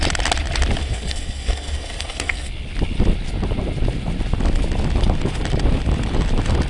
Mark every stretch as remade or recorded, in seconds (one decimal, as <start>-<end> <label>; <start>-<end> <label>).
0.0-0.8 recorded; 0.8-2.5 remade; 2.5-6.7 recorded